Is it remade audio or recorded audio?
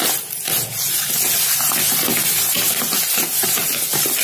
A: recorded